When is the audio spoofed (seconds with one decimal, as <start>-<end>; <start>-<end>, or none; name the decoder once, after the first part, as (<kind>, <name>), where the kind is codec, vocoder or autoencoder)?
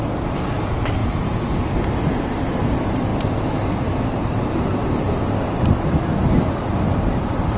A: 1.0-1.6 (vocoder, Vocos)